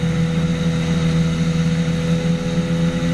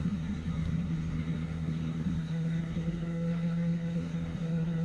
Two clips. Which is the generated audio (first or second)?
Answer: second